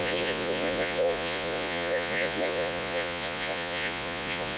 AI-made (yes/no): yes